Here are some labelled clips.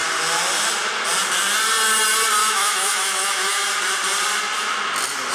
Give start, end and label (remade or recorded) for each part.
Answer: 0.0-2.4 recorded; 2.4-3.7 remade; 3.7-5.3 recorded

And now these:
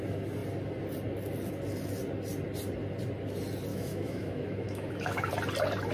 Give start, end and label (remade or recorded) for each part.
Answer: 0.0-3.7 recorded; 3.7-5.3 remade; 5.3-5.9 recorded

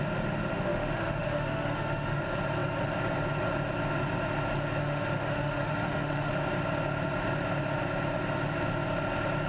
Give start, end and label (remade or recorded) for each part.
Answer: 0.0-0.5 recorded; 0.5-2.2 remade; 2.2-4.8 recorded; 4.8-6.3 remade; 6.3-9.5 recorded

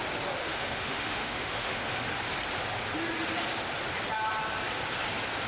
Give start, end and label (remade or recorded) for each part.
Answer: 0.0-0.4 recorded; 0.4-2.1 remade; 2.1-5.5 recorded

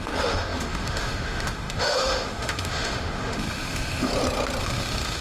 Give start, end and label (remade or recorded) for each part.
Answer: 0.0-4.1 remade; 4.1-4.6 recorded; 4.6-5.2 remade

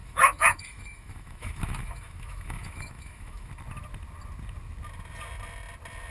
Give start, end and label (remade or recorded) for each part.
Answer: 0.0-3.5 remade; 3.5-6.1 recorded

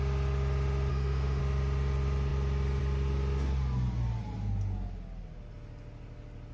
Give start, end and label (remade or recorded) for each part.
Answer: 0.0-0.9 recorded; 0.9-1.4 remade; 1.4-6.5 recorded